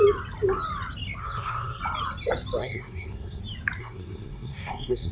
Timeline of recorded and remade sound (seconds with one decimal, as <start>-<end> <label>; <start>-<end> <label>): 0.0-1.2 recorded; 1.2-1.8 remade; 1.8-2.6 recorded; 2.6-3.4 remade; 3.4-3.8 recorded; 3.8-5.1 remade